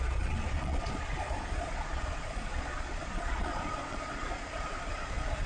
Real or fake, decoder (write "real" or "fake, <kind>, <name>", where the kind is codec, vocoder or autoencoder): fake, vocoder, Vocos